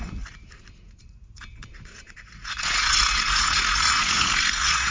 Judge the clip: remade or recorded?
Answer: remade